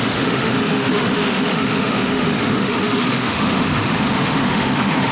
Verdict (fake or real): fake